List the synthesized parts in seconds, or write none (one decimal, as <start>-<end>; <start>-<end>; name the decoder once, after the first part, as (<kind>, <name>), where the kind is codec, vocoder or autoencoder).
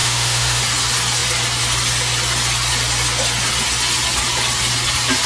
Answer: 0.0-0.6 (autoencoder, DAC-VAE)